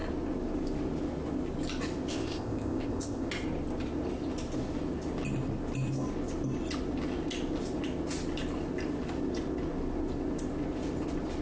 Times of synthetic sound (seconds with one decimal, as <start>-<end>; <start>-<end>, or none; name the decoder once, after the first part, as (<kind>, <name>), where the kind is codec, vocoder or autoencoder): 2.1-3.3 (codec, ZipCodec)